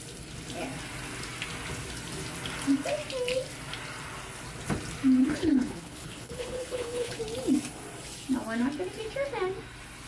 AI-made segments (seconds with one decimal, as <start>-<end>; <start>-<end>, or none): 5.2-7.2